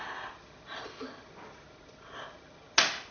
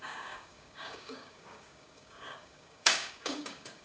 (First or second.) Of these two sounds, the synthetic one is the second